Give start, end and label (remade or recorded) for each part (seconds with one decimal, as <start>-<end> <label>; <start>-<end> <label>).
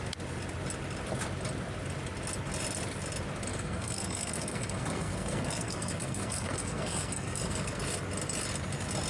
0.0-3.5 recorded; 3.5-7.8 remade; 7.8-9.1 recorded